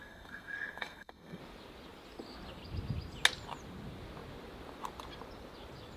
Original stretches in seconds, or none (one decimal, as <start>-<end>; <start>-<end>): 1.4-6.0

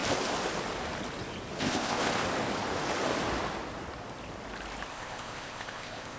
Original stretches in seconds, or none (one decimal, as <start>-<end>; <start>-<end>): 0.0-1.6; 2.1-4.9

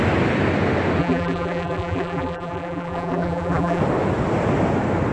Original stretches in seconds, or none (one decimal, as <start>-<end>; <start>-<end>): 0.0-1.0; 3.8-5.1

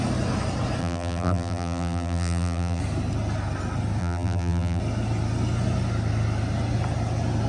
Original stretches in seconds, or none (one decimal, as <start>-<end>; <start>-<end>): 0.0-0.8; 2.8-4.0; 4.8-7.5

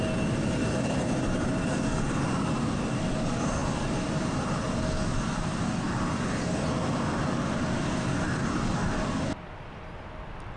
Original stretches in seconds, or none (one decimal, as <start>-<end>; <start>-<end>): 0.0-10.6